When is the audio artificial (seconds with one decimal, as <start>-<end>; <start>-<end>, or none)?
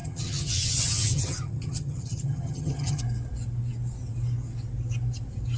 0.0-3.0